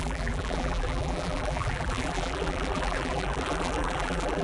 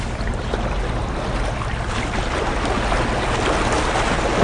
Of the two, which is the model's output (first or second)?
first